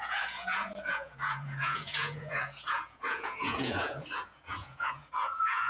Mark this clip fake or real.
fake